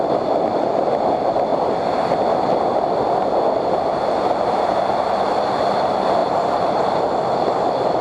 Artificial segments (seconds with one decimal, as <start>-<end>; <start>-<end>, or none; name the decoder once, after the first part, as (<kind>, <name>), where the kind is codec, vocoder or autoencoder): 3.9-5.6 (vocoder, BigVGAN v2); 6.2-7.0